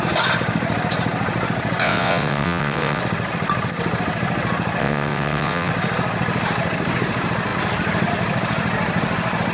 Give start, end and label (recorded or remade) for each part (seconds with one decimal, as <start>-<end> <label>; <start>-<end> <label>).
0.0-1.8 recorded; 1.8-3.0 remade; 3.0-4.8 recorded; 4.8-5.7 remade; 5.7-9.5 recorded